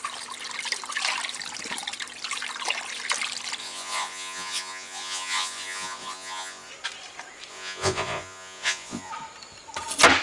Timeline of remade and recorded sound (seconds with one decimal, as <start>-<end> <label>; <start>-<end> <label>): 0.0-3.6 recorded; 3.6-6.7 remade; 6.7-7.5 recorded; 7.5-9.1 remade; 9.1-10.2 recorded